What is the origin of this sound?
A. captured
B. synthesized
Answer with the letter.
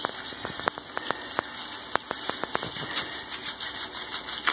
A